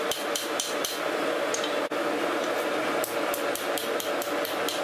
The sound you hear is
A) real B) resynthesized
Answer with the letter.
A